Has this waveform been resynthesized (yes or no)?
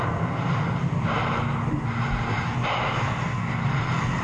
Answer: no